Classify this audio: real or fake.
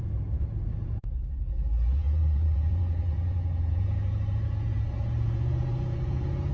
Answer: fake